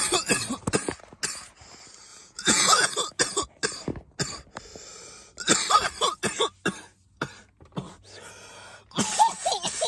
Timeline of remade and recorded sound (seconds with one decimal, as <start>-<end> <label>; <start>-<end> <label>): 0.0-2.1 recorded; 2.1-2.9 remade; 2.9-9.9 recorded